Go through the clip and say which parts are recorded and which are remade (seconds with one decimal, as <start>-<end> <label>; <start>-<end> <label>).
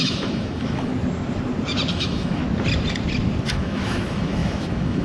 0.0-0.9 remade; 0.9-1.9 recorded; 1.9-2.4 remade; 2.4-3.5 recorded; 3.5-5.0 remade